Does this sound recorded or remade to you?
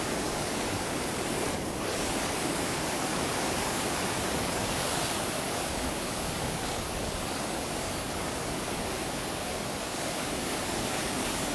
remade